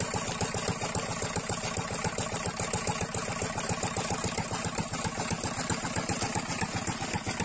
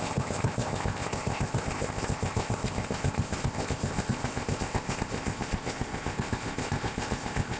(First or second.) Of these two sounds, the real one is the first